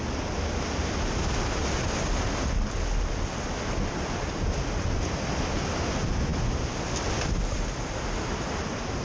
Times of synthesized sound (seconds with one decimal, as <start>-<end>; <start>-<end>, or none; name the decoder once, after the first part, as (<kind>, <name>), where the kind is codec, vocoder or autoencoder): none